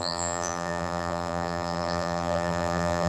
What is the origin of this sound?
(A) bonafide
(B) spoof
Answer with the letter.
B